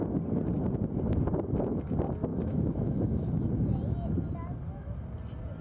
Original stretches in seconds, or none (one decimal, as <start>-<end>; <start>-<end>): 0.0-2.3; 3.3-5.6

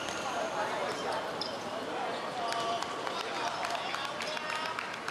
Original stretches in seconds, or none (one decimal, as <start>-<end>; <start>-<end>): 0.0-5.1

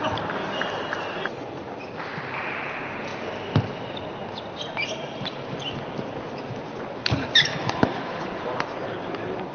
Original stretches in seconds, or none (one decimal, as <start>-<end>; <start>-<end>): 0.0-7.5; 8.3-9.5

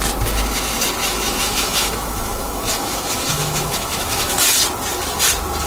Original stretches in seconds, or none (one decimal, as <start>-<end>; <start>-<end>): 0.0-1.0; 4.4-5.7